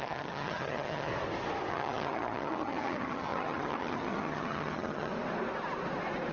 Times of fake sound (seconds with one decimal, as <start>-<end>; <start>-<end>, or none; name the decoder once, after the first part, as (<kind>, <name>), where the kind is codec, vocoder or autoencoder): 0.0-1.1 (vocoder, HiFi-GAN); 1.7-5.1